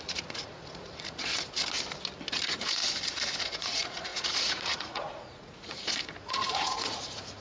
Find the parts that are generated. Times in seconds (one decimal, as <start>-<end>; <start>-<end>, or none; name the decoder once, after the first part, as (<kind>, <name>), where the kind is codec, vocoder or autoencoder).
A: 0.0-1.3 (vocoder, Vocos); 2.3-2.8; 3.4-7.4